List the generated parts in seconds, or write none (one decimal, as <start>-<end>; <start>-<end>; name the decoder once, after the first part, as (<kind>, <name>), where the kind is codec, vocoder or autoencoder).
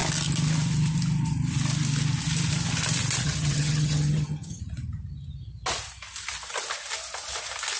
3.2-4.6 (vocoder, HiFi-GAN)